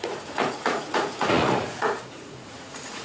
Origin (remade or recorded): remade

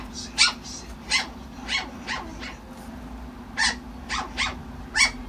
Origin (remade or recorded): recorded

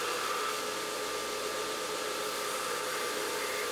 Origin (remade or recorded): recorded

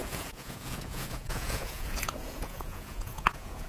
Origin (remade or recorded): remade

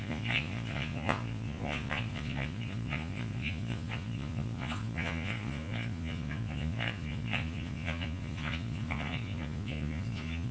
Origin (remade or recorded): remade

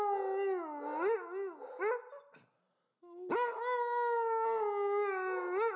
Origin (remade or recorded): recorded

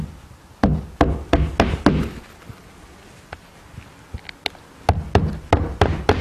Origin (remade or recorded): recorded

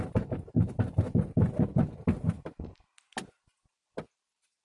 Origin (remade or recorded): recorded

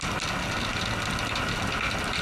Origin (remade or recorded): recorded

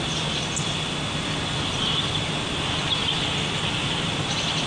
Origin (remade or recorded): recorded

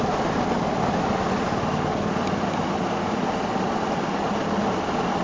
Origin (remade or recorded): recorded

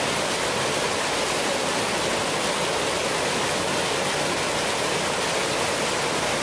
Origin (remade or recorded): recorded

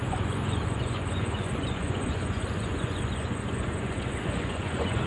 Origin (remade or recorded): remade